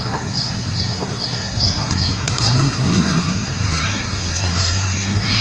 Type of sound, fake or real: fake